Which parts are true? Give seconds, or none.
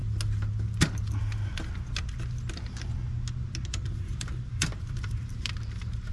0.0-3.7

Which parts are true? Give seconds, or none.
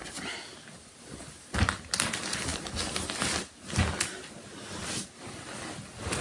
0.0-6.2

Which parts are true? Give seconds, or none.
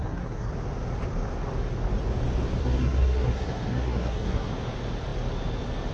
0.5-2.6; 4.5-5.9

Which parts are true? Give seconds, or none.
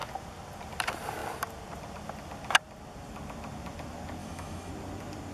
0.0-4.2; 4.7-5.3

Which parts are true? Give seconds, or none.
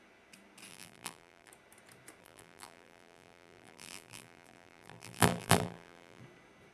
0.0-0.7; 1.5-2.2; 6.2-6.7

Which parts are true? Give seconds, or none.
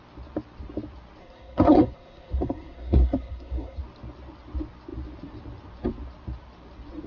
0.0-1.2; 3.8-7.1